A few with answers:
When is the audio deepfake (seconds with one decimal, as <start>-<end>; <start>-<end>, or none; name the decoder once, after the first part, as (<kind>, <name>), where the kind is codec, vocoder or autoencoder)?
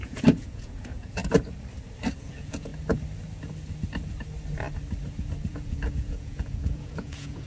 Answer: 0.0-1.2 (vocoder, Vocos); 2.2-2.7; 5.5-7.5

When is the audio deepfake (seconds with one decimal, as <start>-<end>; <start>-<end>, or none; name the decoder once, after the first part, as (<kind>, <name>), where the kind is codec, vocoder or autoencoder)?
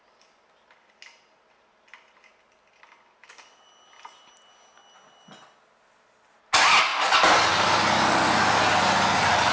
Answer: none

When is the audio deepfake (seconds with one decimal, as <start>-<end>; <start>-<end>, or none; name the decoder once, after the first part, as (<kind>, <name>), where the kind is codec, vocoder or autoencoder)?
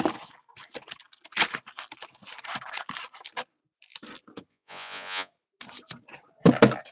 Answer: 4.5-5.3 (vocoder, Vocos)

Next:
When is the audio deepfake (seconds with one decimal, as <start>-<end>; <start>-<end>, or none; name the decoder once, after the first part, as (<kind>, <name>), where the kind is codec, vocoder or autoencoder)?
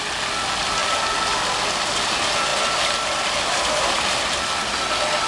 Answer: none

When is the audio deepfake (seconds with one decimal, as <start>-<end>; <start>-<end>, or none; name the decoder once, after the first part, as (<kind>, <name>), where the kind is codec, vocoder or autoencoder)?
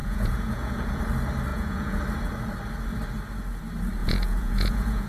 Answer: 0.0-1.0 (vocoder, Vocos); 1.5-2.0; 4.0-5.1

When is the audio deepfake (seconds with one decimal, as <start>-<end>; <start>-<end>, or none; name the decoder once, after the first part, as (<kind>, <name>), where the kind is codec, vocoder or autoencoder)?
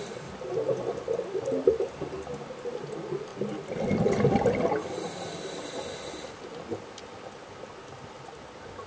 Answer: none